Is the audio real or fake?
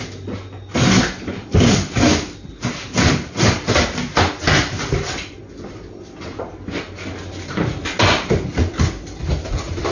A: real